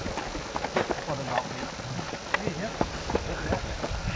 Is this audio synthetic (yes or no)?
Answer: no